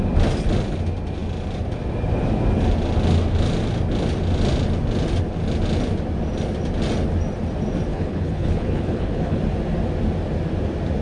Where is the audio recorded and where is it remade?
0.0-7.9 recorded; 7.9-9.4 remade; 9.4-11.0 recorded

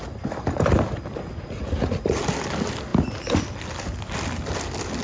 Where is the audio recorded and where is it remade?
0.0-1.6 recorded; 1.6-2.2 remade; 2.2-5.0 recorded

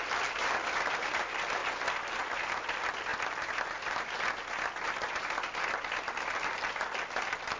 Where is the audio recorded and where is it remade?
0.0-1.6 remade; 1.6-2.2 recorded; 2.2-3.1 remade; 3.1-5.9 recorded; 5.9-7.6 remade

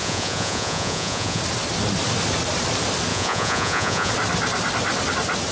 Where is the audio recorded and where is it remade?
0.0-1.4 remade; 1.4-3.1 recorded; 3.1-4.1 remade; 4.1-5.5 recorded

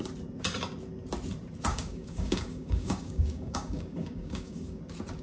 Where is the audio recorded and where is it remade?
0.0-1.7 recorded; 1.7-4.8 remade; 4.8-5.2 recorded

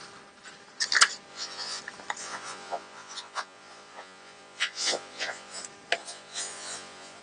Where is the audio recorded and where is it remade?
0.0-1.3 recorded; 1.3-1.8 remade; 1.8-2.2 recorded; 2.2-5.6 remade; 5.6-6.0 recorded; 6.0-7.2 remade

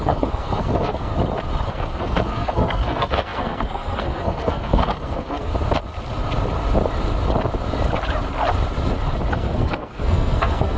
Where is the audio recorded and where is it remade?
0.0-1.1 remade; 1.1-1.7 recorded; 1.7-5.5 remade; 5.5-9.3 recorded; 9.3-10.8 remade